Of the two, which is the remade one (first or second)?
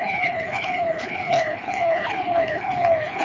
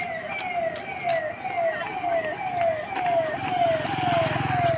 first